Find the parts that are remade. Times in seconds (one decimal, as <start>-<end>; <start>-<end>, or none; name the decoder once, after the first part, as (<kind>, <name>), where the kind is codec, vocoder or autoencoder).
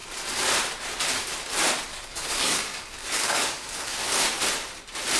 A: 1.9-4.0 (codec, DAC)